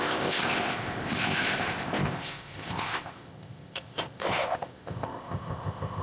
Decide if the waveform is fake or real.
fake